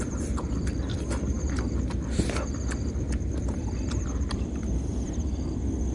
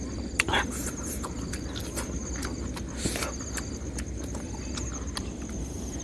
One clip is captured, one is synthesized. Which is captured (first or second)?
second